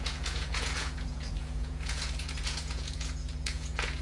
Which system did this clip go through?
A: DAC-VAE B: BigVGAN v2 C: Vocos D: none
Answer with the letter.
C